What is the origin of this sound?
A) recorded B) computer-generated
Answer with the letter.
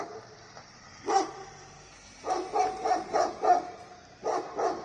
B